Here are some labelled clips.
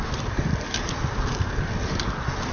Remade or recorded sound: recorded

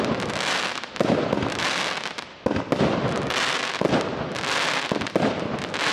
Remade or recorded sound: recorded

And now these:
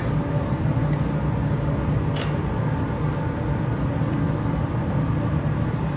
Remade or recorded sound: recorded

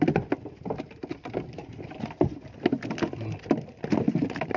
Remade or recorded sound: recorded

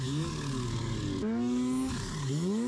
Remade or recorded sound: remade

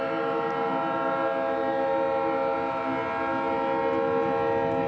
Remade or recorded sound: recorded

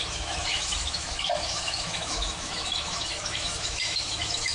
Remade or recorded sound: remade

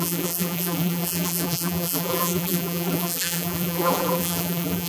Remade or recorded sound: remade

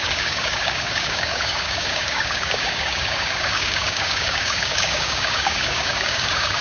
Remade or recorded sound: remade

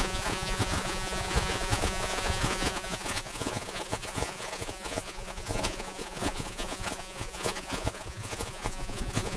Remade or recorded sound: remade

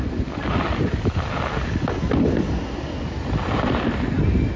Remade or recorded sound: recorded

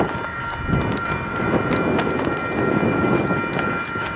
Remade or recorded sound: recorded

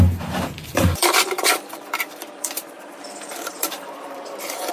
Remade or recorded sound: remade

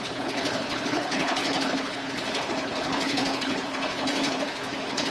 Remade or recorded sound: remade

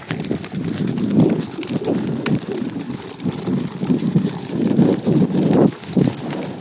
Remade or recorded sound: recorded